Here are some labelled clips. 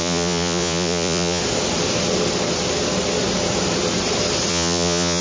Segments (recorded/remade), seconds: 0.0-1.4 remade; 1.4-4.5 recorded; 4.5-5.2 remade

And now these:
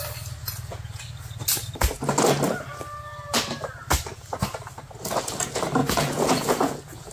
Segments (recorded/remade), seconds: 0.0-0.4 recorded; 0.4-1.0 remade; 1.0-5.8 recorded; 5.8-7.1 remade

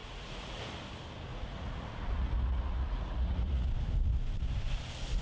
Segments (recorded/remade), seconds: 0.0-0.6 remade; 0.6-1.3 recorded; 1.3-3.7 remade; 3.7-5.2 recorded

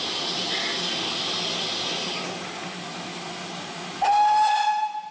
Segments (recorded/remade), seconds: 0.0-5.1 recorded

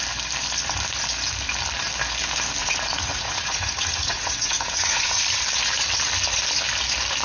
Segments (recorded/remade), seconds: 0.0-2.6 recorded; 2.6-5.2 remade; 5.2-7.2 recorded

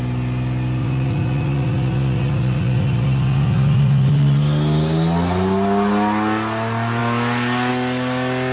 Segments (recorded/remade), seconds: 0.0-0.8 recorded; 0.8-4.4 remade; 4.4-8.5 recorded

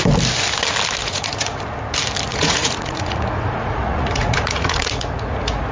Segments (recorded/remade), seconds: 0.0-1.0 recorded; 1.0-1.6 remade; 1.6-2.3 recorded; 2.3-5.7 remade